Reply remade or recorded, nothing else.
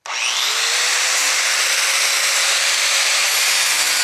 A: remade